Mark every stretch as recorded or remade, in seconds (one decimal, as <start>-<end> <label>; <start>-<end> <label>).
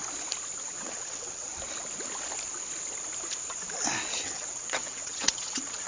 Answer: 0.0-0.6 recorded; 0.6-1.5 remade; 1.5-4.1 recorded; 4.1-5.9 remade